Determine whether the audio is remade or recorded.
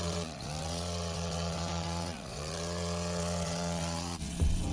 remade